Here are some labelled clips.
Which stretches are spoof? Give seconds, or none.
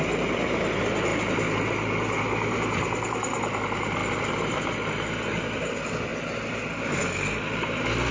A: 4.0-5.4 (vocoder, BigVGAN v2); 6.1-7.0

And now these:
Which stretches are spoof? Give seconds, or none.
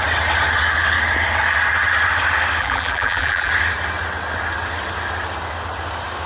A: 2.6-3.5 (vocoder, BigVGAN v2)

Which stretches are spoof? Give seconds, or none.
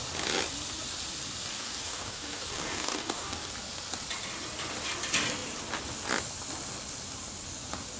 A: 1.5-3.5 (codec, DAC)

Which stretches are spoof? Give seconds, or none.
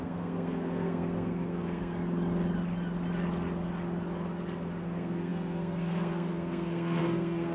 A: 0.0-1.9 (codec, SNAC); 4.8-7.5